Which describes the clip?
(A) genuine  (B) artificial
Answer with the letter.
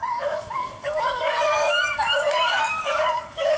B